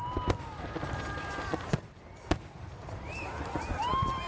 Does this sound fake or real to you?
fake